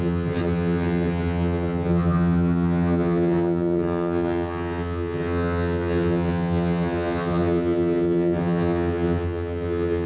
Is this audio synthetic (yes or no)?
yes